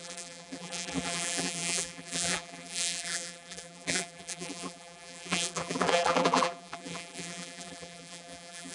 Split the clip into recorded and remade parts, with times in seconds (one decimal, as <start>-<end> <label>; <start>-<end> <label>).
0.0-8.7 remade

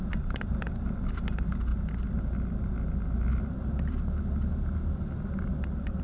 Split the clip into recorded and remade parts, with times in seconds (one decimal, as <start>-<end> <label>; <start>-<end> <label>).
0.0-6.0 recorded

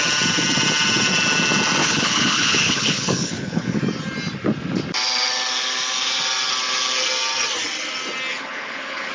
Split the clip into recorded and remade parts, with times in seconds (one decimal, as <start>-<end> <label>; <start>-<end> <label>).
0.0-1.8 recorded; 1.8-3.8 remade; 3.8-8.3 recorded; 8.3-9.1 remade